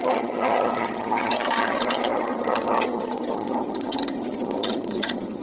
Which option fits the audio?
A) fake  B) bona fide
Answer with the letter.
A